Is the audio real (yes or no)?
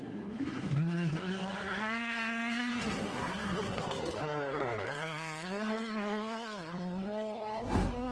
no